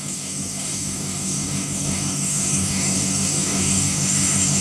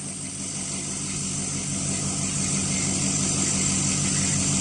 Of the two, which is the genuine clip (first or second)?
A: second